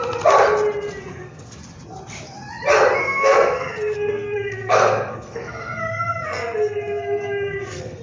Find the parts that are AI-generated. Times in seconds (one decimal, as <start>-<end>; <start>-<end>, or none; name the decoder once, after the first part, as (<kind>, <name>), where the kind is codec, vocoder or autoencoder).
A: 1.1-1.6 (codec, SNAC); 3.0-8.0